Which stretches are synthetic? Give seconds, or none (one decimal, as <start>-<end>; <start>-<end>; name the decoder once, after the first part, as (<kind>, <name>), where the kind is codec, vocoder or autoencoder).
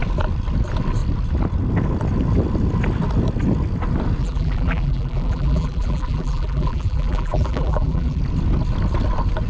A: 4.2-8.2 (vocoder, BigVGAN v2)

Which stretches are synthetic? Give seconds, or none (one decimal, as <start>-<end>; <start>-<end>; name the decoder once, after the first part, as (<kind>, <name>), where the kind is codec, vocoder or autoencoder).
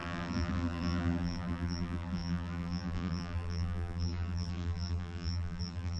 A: 0.0-6.0 (vocoder, BigVGAN v2)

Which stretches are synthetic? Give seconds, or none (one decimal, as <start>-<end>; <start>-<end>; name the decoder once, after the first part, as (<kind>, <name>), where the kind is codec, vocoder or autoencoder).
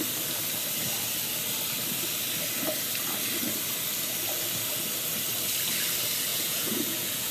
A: 6.3-7.3 (vocoder, Vocos)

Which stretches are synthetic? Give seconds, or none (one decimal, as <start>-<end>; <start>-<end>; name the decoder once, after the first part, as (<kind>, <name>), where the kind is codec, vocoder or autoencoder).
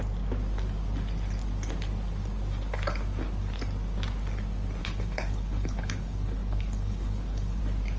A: 4.8-7.6 (codec, HILCodec)